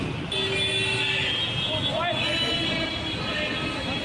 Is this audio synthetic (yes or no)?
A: no